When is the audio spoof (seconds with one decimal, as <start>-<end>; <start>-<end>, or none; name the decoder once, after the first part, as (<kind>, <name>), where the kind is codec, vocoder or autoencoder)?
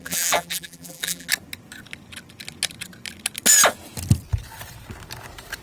0.0-1.3 (vocoder, BigVGAN v2)